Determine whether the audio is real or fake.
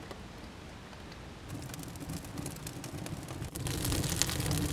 real